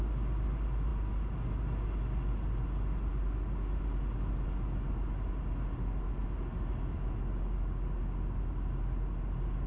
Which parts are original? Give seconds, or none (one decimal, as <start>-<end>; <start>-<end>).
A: 0.0-9.7